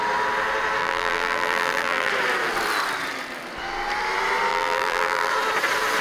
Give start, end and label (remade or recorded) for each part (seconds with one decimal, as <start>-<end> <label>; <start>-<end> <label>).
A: 0.0-0.8 recorded; 0.8-2.1 remade; 2.1-4.5 recorded; 4.5-5.3 remade; 5.3-6.0 recorded